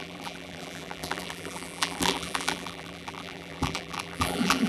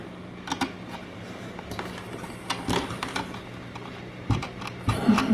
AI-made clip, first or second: first